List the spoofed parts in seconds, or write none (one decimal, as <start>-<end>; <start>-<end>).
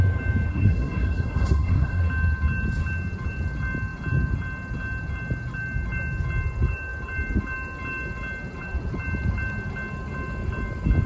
0.5-2.0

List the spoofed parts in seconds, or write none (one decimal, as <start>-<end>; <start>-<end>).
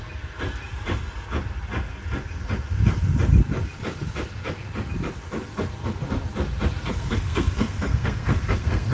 6.9-8.9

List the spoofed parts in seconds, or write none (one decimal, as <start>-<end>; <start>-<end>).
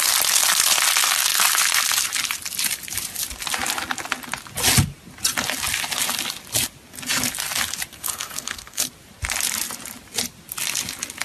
7.9-8.9